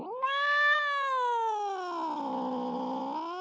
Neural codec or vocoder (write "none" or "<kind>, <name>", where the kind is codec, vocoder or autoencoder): none